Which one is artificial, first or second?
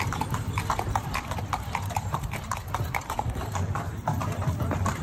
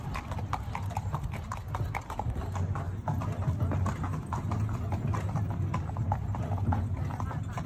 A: first